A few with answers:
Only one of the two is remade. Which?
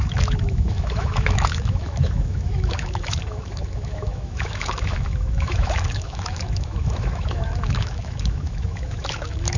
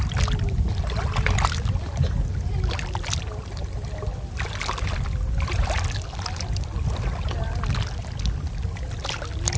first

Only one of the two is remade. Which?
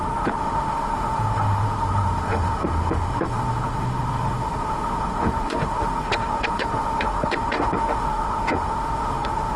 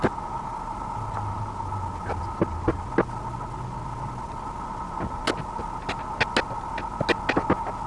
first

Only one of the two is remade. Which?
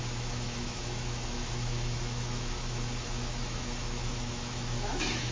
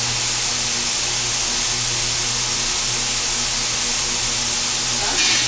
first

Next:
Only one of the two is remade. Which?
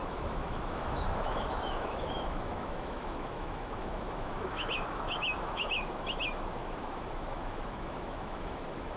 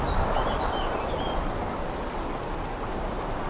first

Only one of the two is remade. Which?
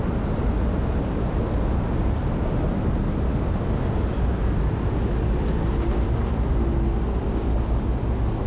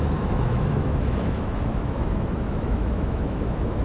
second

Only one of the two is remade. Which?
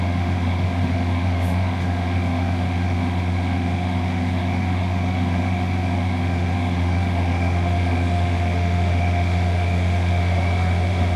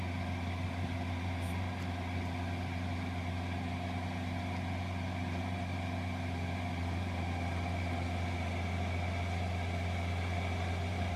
first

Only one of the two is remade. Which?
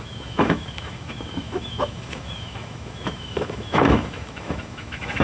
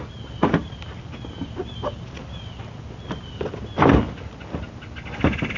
first